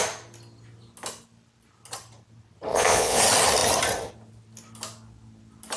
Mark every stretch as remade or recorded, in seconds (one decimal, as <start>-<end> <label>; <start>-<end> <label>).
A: 0.0-2.7 recorded; 2.7-3.2 remade; 3.2-5.8 recorded

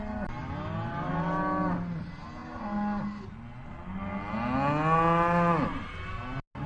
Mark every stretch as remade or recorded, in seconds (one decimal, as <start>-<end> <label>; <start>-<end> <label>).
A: 0.0-6.7 recorded

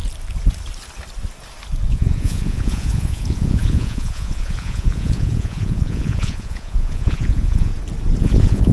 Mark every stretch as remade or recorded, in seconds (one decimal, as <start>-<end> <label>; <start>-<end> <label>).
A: 0.0-1.9 recorded; 1.9-7.7 remade; 7.7-8.2 recorded; 8.2-8.7 remade

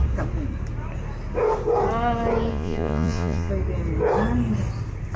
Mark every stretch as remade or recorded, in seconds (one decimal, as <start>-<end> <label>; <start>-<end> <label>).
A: 0.0-2.5 recorded; 2.5-3.5 remade; 3.5-5.2 recorded

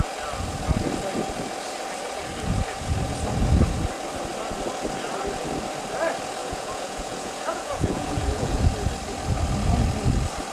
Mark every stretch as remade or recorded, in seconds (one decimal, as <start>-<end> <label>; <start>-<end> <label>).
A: 0.0-6.4 recorded; 6.4-8.6 remade; 8.6-10.5 recorded

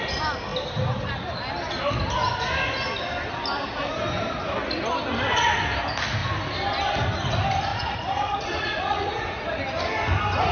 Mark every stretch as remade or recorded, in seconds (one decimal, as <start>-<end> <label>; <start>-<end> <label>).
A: 0.0-7.7 recorded; 7.7-9.6 remade; 9.6-10.5 recorded